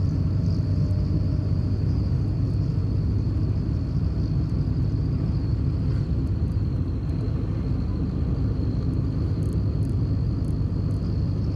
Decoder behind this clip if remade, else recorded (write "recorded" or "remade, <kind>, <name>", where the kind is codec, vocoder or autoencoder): recorded